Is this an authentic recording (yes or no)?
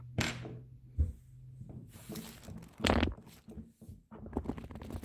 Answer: yes